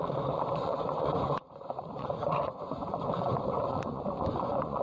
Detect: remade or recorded remade